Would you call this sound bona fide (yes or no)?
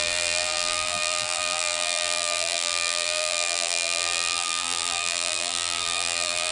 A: no